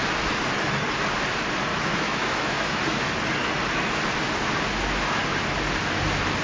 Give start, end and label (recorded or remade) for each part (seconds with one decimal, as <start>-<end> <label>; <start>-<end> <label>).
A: 0.0-1.7 recorded; 1.7-2.8 remade; 2.8-6.4 recorded